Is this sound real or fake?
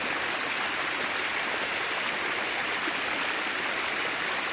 real